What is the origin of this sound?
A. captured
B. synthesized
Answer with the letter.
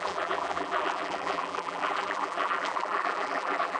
B